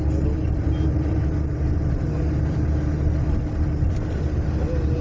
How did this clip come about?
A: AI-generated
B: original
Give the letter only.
B